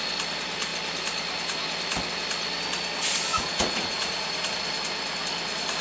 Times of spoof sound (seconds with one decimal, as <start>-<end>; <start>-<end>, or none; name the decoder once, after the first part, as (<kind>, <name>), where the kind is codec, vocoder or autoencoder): 3.3-4.5 (vocoder, Vocos)